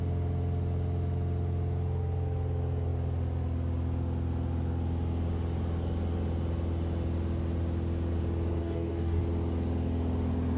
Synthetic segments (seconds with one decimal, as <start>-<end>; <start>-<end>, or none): 8.6-9.2